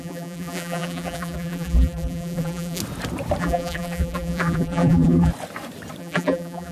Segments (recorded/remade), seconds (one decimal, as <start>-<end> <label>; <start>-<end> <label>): 0.0-2.8 remade; 2.8-3.4 recorded; 3.4-5.3 remade; 5.3-6.0 recorded; 6.0-6.7 remade

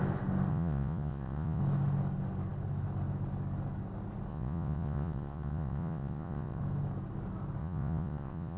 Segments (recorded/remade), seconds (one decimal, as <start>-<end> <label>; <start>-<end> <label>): 0.0-0.5 recorded; 0.5-1.6 remade; 1.6-4.3 recorded; 4.3-6.6 remade; 6.6-7.6 recorded; 7.6-8.6 remade

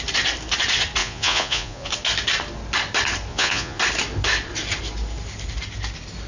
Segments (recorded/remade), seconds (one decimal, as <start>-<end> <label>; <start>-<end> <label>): 0.0-1.0 recorded; 1.0-1.9 remade; 1.9-3.3 recorded; 3.3-3.8 remade; 3.8-6.3 recorded

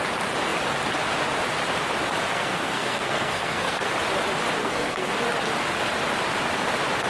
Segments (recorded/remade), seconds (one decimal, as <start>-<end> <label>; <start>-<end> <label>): 0.0-2.3 recorded; 2.3-3.9 remade; 3.9-4.6 recorded; 4.6-5.1 remade; 5.1-7.1 recorded

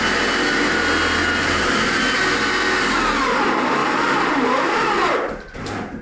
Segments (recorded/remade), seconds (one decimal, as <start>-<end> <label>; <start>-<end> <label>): 0.0-1.2 recorded; 1.2-2.0 remade; 2.0-3.8 recorded; 3.8-6.0 remade

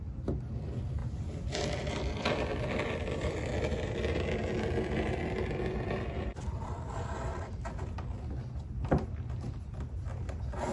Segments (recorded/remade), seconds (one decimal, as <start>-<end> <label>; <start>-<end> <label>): 0.0-1.0 recorded; 1.0-3.5 remade; 3.5-7.3 recorded; 7.3-7.9 remade; 7.9-10.7 recorded

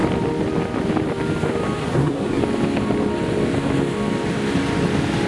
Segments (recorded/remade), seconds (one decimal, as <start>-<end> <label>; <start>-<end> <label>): 0.0-1.8 recorded; 1.8-2.4 remade; 2.4-5.3 recorded

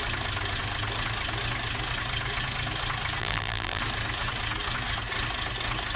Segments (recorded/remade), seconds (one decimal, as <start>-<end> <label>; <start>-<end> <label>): 0.0-3.2 recorded; 3.2-3.8 remade; 3.8-6.0 recorded